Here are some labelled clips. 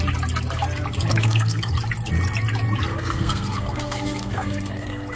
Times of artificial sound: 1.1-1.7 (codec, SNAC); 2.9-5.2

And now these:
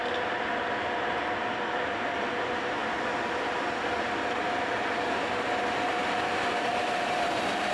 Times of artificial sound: none

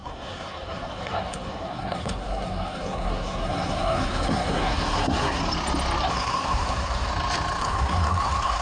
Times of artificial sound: 0.0-5.4 (codec, SNAC); 6.1-7.1; 7.6-8.6

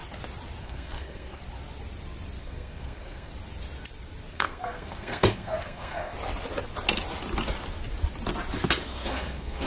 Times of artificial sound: 0.6-1.4 (codec, SNAC); 2.4-3.3; 4.3-6.1; 8.8-9.7